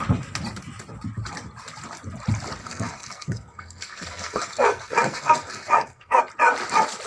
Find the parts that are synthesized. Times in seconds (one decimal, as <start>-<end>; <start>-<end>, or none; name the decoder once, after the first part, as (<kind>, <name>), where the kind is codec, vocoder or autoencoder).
2.6-6.2 (codec, SNAC)